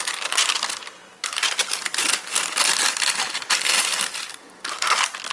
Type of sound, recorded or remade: recorded